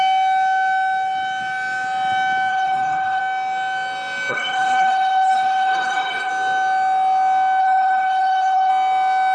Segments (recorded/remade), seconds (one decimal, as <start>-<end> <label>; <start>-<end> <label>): 0.0-2.5 recorded; 2.5-3.2 remade; 3.2-4.3 recorded; 4.3-6.3 remade; 6.3-7.6 recorded; 7.6-8.7 remade; 8.7-9.3 recorded